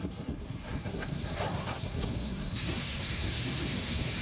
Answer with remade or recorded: remade